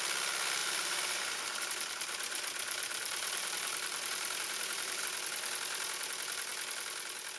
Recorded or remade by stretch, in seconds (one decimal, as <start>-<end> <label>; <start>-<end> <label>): 0.0-0.6 recorded; 0.6-5.0 remade; 5.0-7.4 recorded